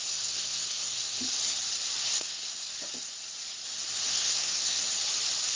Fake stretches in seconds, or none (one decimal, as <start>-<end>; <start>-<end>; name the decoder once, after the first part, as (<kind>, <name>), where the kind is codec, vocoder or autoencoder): 0.0-1.2 (codec, SNAC); 2.0-2.7; 4.1-4.8